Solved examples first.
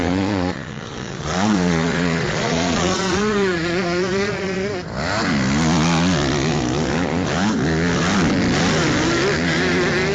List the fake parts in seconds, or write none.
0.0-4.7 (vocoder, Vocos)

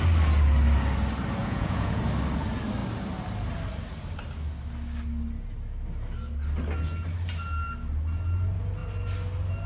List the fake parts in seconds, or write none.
1.4-2.0 (vocoder, Vocos)

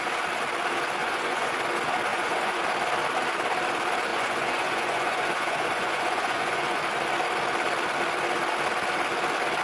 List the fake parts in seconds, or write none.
1.0-1.6 (vocoder, Vocos); 2.1-2.6; 4.1-6.8